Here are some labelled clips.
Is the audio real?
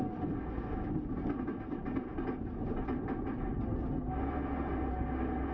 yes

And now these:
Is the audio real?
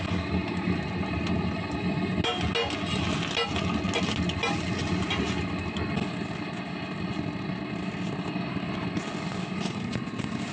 yes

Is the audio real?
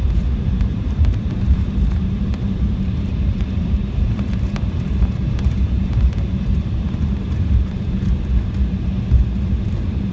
no